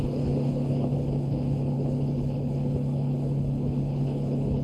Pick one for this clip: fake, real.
fake